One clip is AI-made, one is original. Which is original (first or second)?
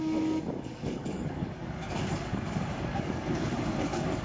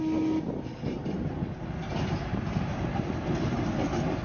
second